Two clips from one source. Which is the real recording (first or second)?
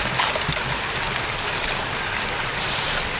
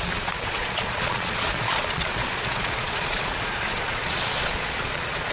first